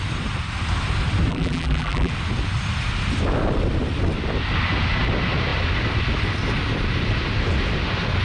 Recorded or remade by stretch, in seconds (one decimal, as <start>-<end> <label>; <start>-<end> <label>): 0.0-1.3 recorded; 1.3-2.1 remade; 2.1-8.2 recorded